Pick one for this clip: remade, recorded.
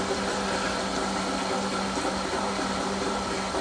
recorded